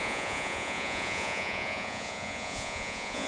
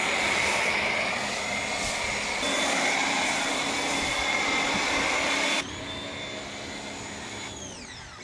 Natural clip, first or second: second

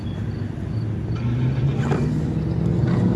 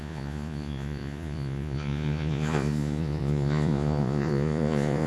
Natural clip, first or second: first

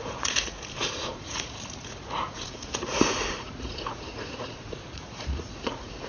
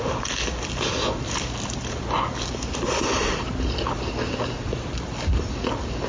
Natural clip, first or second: second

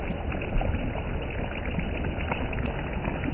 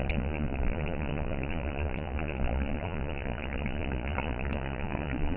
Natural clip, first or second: first